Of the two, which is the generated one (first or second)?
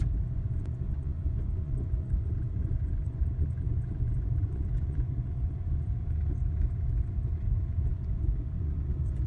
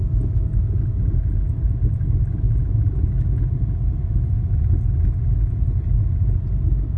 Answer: first